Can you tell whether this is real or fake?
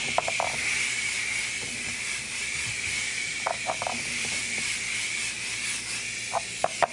real